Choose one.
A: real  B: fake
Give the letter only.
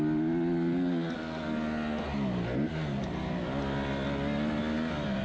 A